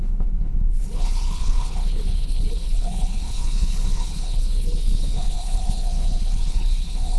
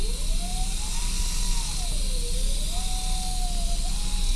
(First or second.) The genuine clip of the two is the second